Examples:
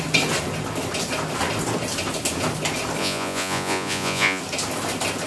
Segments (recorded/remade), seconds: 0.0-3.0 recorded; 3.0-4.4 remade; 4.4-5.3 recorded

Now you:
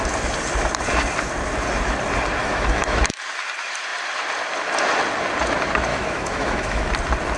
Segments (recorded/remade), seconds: 0.0-2.4 recorded; 2.4-3.2 remade; 3.2-5.9 recorded; 5.9-6.9 remade; 6.9-7.4 recorded

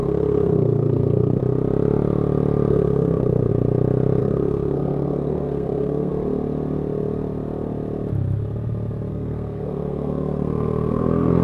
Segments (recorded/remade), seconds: 0.0-1.4 remade; 1.4-2.7 recorded; 2.7-3.5 remade; 3.5-4.2 recorded; 4.2-6.1 remade; 6.1-9.1 recorded; 9.1-11.4 remade

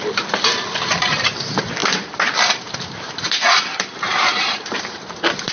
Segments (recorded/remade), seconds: 0.0-5.5 remade

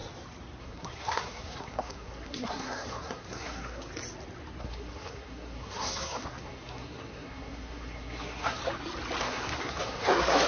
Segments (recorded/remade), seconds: 0.0-0.6 recorded; 0.6-3.9 remade; 3.9-4.6 recorded; 4.6-8.6 remade; 8.6-9.2 recorded; 9.2-10.5 remade

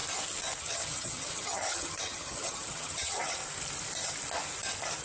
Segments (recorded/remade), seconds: 0.0-0.6 recorded; 0.6-3.4 remade; 3.4-5.0 recorded

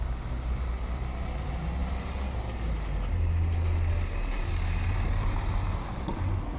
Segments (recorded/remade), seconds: 0.0-6.6 recorded

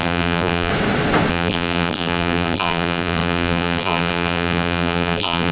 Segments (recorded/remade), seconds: 0.0-0.7 remade; 0.7-1.3 recorded; 1.3-5.5 remade